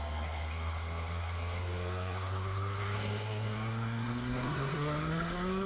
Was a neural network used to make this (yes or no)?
yes